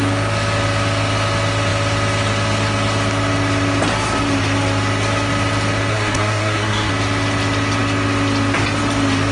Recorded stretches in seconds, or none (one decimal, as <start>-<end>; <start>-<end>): 0.0-5.9; 6.9-9.3